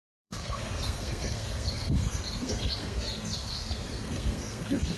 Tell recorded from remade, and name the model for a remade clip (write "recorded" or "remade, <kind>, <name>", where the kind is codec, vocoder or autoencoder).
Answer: remade, codec, SNAC